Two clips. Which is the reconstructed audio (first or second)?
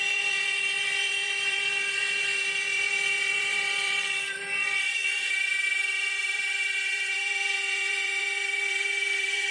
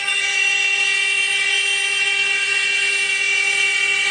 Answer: first